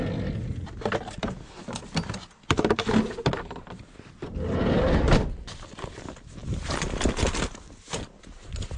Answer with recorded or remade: recorded